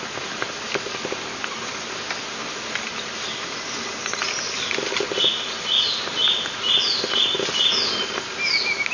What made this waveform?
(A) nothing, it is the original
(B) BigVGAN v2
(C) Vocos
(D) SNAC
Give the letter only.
A